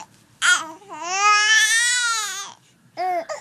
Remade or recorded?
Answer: recorded